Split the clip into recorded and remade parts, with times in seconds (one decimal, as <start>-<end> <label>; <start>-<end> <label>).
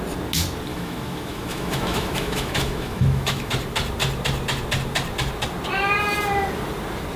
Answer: 0.0-0.7 recorded; 0.7-3.5 remade; 3.5-7.2 recorded